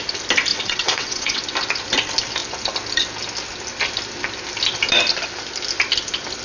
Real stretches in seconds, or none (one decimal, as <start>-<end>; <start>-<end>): 0.0-0.5; 1.4-6.4